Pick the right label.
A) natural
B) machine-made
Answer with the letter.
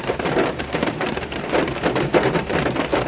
A